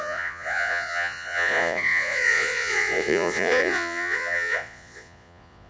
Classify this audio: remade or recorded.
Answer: remade